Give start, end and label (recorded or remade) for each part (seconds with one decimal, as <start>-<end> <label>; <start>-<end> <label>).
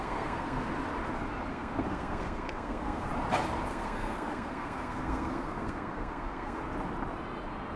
0.0-0.7 remade; 0.7-1.5 recorded; 1.5-3.1 remade; 3.1-3.7 recorded; 3.7-6.6 remade; 6.6-7.8 recorded